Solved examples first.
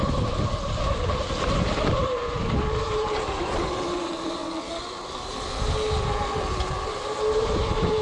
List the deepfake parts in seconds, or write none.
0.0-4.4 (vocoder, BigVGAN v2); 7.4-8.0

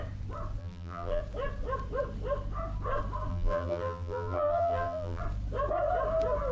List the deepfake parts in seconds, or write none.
0.6-1.2 (vocoder, BigVGAN v2); 3.3-5.2

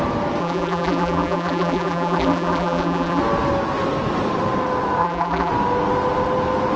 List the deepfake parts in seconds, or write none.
0.4-3.2 (vocoder, BigVGAN v2); 5.0-5.5

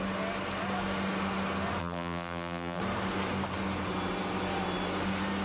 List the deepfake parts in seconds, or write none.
1.8-2.8 (vocoder, BigVGAN v2)

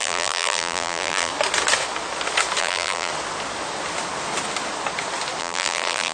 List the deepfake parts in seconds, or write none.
0.0-1.3 (vocoder, BigVGAN v2); 2.6-3.1; 5.4-6.1

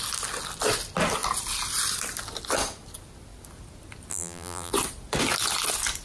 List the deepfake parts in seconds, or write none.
4.1-4.7 (vocoder, BigVGAN v2)